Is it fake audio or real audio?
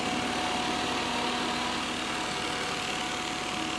real